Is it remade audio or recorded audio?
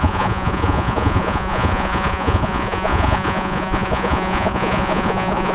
remade